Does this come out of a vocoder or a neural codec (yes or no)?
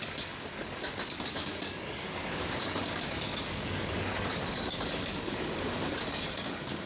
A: yes